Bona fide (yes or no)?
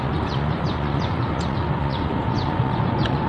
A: no